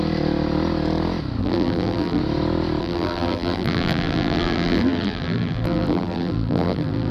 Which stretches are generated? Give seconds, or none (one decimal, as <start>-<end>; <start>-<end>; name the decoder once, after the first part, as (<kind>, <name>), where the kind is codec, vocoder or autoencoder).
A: 1.4-2.2 (vocoder, BigVGAN v2); 2.8-7.1